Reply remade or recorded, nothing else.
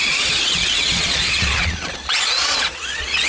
remade